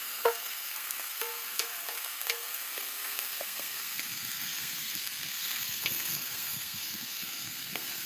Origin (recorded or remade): remade